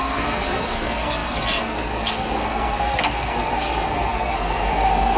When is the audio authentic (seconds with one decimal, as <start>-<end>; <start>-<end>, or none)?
none